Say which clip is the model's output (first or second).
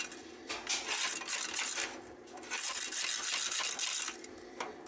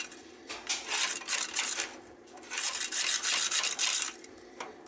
second